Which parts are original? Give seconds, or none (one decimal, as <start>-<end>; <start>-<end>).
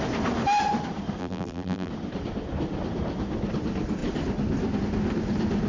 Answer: 0.0-1.2; 1.9-5.7